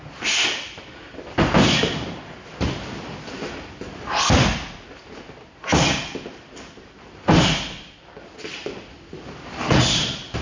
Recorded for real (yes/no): yes